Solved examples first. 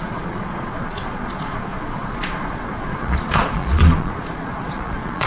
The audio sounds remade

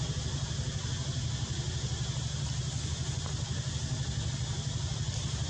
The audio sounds recorded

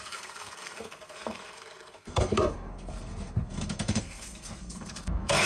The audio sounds remade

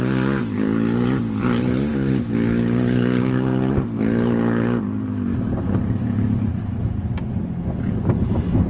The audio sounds recorded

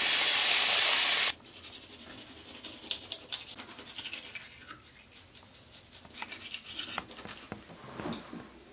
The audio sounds recorded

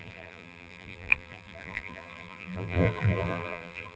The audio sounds remade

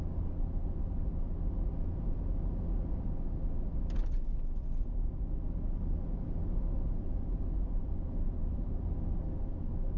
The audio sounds recorded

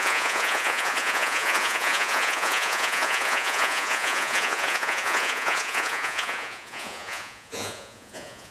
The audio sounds remade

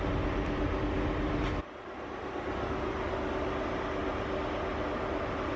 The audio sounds recorded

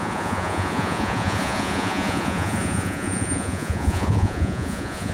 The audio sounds remade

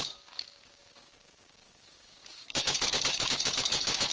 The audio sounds remade